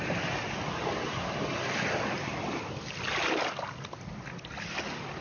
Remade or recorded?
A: recorded